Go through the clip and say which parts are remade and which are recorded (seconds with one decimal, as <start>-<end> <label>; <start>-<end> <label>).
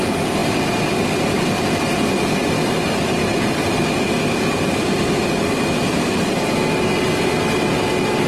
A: 0.0-2.4 recorded; 2.4-5.4 remade; 5.4-8.3 recorded